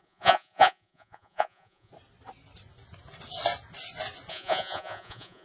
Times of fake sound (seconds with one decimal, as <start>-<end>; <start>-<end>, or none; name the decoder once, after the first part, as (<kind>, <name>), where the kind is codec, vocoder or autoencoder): 0.0-1.9 (vocoder, Vocos); 4.3-5.4